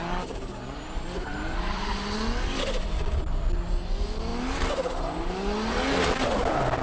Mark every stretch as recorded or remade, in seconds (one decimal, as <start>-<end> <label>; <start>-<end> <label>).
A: 0.0-6.8 recorded